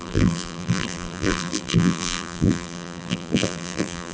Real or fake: fake